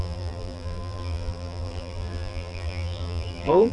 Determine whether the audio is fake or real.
fake